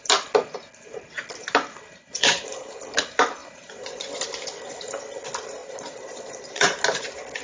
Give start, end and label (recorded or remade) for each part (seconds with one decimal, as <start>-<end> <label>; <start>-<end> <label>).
0.0-2.0 recorded; 2.0-2.7 remade; 2.7-3.4 recorded; 3.4-4.2 remade; 4.2-5.6 recorded; 5.6-6.8 remade; 6.8-7.4 recorded